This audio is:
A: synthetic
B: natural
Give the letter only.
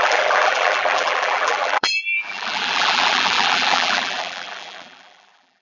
A